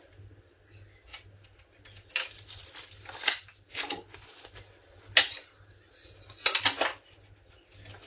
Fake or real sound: real